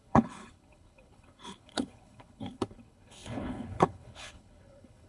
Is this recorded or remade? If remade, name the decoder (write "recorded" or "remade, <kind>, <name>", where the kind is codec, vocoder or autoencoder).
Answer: remade, codec, HILCodec